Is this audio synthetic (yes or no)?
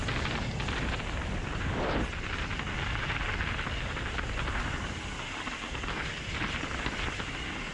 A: no